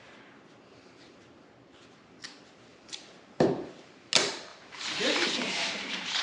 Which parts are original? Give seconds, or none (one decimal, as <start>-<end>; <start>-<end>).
0.0-2.7; 3.9-4.5